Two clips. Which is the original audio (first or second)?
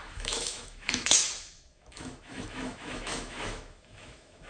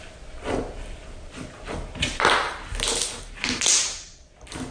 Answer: second